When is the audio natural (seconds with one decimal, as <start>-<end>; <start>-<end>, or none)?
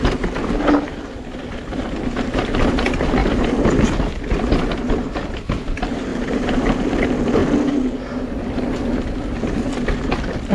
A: 0.0-6.1; 6.6-10.5